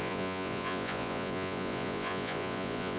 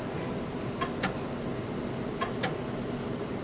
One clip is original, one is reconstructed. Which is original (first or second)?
second